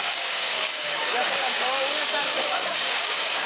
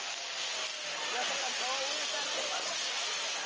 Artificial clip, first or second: first